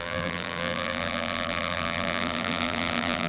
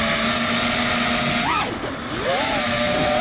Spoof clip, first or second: first